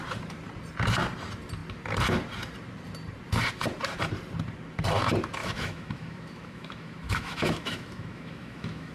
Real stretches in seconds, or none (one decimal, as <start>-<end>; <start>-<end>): 0.0-5.4